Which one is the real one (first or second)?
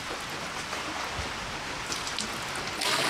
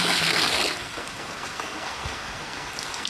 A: first